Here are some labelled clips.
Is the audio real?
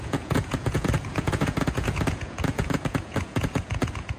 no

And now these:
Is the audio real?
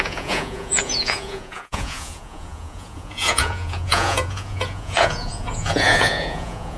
no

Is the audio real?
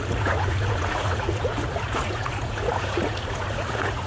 no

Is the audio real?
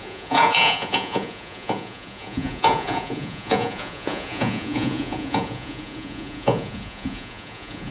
no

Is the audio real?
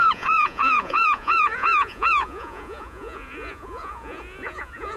no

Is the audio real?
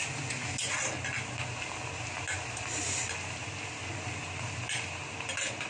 yes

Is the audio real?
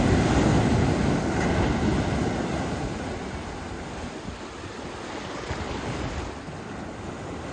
yes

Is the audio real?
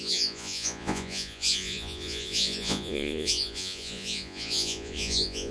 no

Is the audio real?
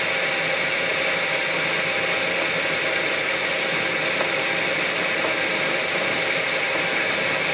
yes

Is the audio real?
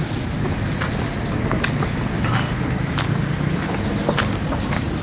yes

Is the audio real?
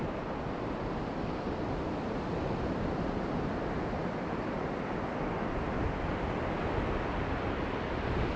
yes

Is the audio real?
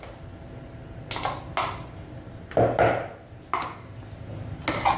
yes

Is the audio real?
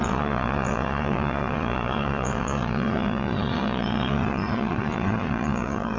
no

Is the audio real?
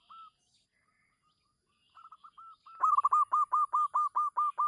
yes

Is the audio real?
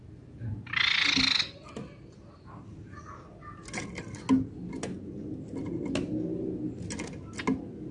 yes